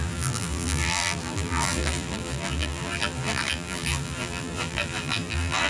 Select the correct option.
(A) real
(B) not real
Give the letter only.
B